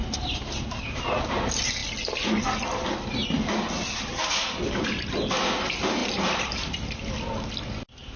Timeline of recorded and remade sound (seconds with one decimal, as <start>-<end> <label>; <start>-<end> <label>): 0.0-6.0 recorded; 6.0-7.2 remade; 7.2-8.2 recorded